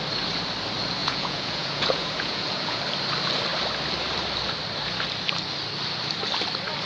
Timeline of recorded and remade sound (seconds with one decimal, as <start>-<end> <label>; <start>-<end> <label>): 0.0-1.0 recorded; 1.0-2.8 remade; 2.8-6.9 recorded